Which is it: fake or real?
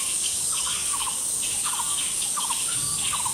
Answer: fake